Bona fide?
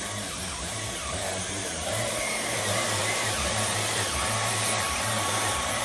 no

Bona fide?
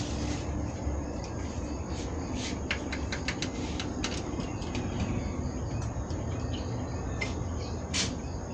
yes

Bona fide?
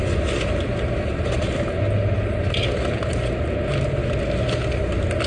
yes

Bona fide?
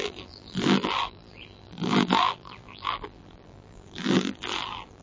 no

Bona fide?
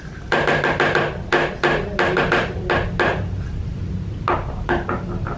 yes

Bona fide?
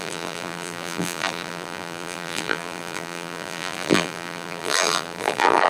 no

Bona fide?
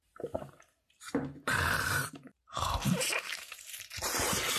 no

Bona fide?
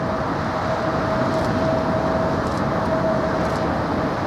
yes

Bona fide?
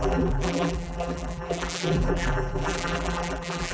no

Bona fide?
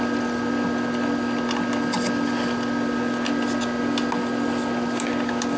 yes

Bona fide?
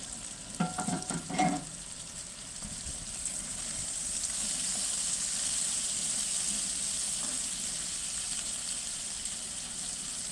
no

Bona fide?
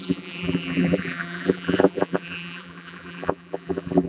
no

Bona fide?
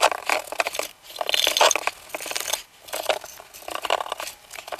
yes